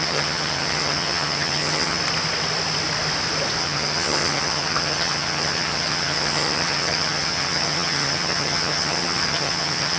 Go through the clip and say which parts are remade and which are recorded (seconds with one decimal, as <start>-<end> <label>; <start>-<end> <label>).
0.0-2.0 remade; 2.0-3.6 recorded; 3.6-10.0 remade